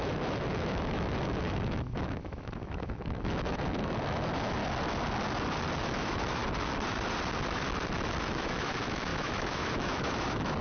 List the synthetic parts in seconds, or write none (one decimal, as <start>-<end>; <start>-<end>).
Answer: 0.0-4.6; 5.8-6.4; 8.2-10.6